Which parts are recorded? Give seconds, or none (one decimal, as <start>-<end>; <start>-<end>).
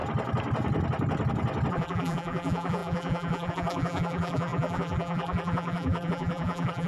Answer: 0.0-1.7